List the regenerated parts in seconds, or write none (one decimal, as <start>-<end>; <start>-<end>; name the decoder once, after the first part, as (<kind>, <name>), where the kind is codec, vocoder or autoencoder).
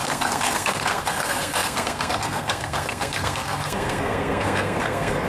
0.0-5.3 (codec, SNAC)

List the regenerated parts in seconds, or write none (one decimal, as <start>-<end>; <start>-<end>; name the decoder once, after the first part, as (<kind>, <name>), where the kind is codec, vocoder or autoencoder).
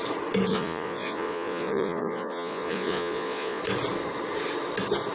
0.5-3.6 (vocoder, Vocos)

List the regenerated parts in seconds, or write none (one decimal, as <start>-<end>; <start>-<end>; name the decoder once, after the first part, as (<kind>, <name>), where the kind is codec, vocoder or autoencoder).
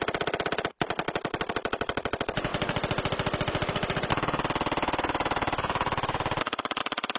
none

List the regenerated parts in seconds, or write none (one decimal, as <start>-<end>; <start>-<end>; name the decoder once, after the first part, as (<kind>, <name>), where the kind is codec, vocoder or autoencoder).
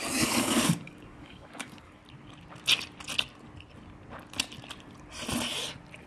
0.0-2.0 (codec, DAC)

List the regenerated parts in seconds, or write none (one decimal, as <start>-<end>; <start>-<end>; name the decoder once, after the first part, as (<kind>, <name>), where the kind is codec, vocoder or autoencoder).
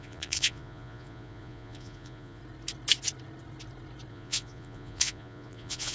0.0-2.4 (vocoder, Vocos); 4.1-5.9